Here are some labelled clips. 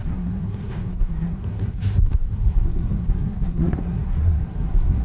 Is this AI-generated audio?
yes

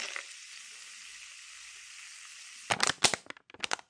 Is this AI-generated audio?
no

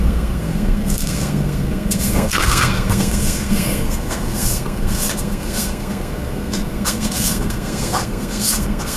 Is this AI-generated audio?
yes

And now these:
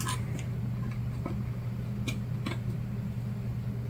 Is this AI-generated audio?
no